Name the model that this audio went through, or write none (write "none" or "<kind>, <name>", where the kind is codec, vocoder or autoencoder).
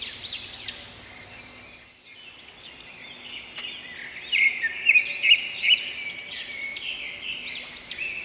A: none